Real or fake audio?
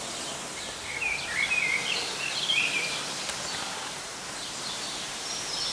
real